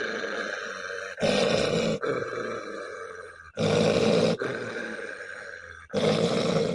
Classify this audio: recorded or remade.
recorded